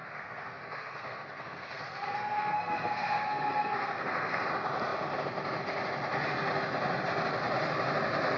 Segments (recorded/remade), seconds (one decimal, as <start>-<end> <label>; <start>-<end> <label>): 0.0-4.4 remade; 4.4-8.4 recorded